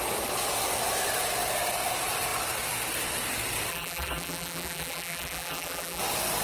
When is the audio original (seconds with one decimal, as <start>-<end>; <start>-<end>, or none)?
0.0-3.7; 6.0-6.4